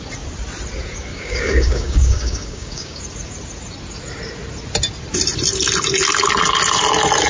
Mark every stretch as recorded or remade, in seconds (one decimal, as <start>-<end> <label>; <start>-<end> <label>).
0.0-1.1 recorded; 1.1-3.0 remade; 3.0-7.3 recorded

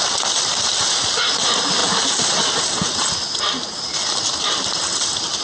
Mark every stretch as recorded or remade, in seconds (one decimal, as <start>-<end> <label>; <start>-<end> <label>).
0.0-5.4 recorded